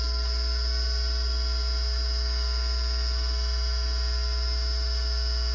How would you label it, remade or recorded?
remade